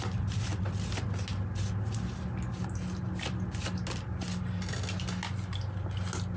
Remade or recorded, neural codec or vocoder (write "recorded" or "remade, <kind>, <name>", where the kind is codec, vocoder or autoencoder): recorded